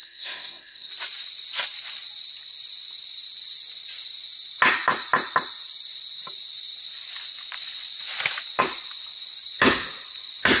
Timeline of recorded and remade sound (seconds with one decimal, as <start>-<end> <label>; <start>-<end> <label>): 0.0-0.9 remade; 0.9-10.6 recorded